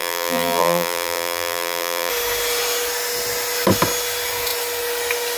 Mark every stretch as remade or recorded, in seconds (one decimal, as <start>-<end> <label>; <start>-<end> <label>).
0.0-2.1 remade; 2.1-5.4 recorded